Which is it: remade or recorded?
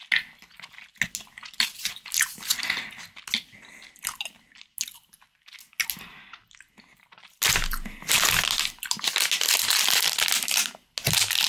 recorded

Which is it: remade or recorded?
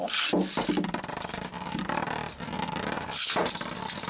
recorded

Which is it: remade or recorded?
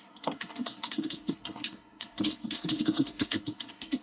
remade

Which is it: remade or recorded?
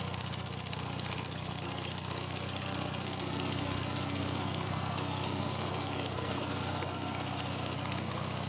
remade